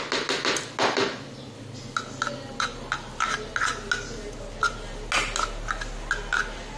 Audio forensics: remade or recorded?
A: recorded